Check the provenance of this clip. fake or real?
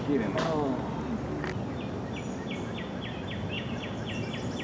real